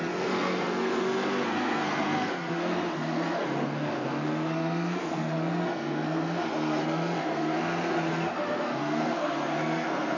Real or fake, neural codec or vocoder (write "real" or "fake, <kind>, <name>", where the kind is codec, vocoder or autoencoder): fake, codec, SNAC